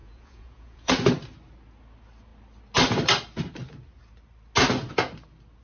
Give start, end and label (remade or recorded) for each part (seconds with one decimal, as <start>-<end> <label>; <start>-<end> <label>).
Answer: 0.0-0.9 remade; 0.9-5.6 recorded